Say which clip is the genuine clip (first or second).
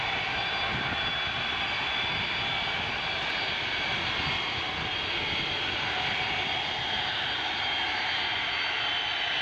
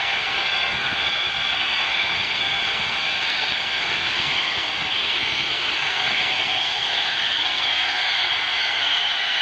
first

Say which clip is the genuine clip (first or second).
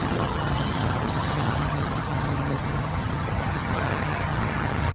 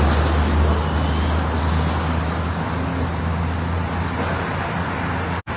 second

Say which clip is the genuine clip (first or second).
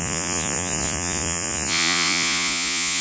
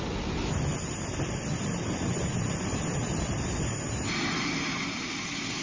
second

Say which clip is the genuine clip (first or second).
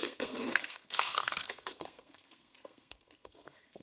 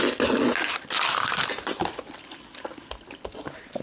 second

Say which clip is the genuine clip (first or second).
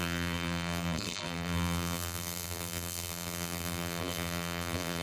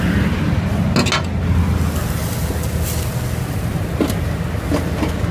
second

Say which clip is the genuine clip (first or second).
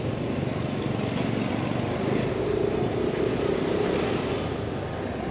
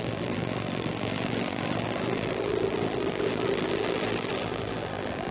first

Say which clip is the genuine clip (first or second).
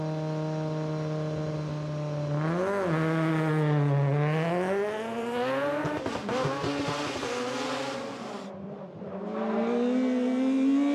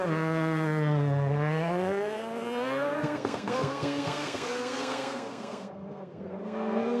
first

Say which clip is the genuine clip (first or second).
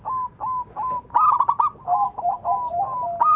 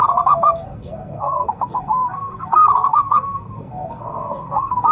first